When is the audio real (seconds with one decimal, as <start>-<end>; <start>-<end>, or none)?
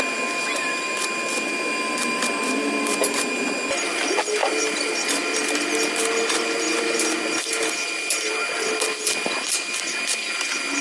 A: 0.0-10.8